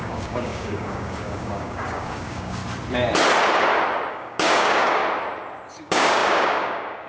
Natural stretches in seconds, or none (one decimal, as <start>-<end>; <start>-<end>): 2.6-4.1; 5.0-5.7